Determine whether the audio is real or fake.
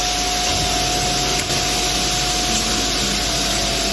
real